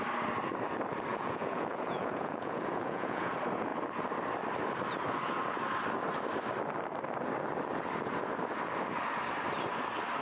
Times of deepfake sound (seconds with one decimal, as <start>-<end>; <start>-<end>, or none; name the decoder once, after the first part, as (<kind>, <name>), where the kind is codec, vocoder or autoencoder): 1.1-3.3 (vocoder, Vocos)